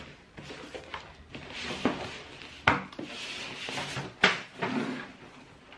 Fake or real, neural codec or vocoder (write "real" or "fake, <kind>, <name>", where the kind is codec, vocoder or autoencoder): real